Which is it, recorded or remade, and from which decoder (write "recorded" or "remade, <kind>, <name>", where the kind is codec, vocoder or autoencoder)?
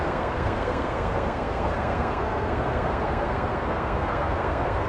remade, codec, SNAC